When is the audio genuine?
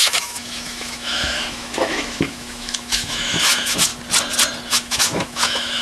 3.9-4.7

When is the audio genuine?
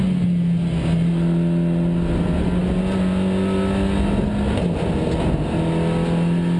0.0-6.6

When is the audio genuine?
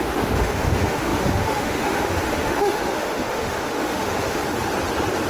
4.4-5.3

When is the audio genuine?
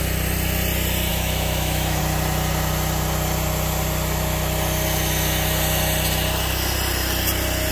0.0-1.1; 2.0-7.7